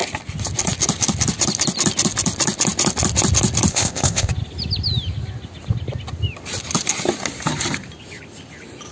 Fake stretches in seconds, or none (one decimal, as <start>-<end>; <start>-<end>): 3.7-4.3